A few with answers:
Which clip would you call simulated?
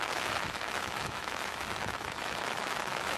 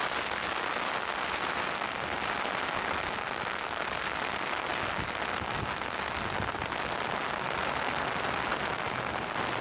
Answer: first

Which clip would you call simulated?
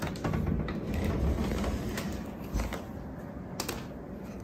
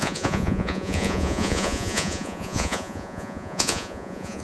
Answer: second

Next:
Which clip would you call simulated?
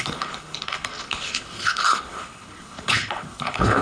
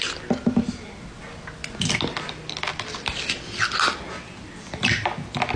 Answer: first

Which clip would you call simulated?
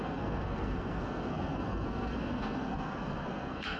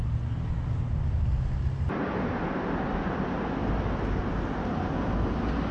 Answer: first